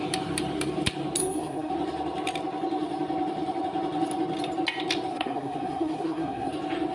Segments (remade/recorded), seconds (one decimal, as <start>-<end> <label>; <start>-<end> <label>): 0.0-1.2 recorded; 1.2-1.7 remade; 1.7-5.1 recorded; 5.1-6.5 remade; 6.5-6.9 recorded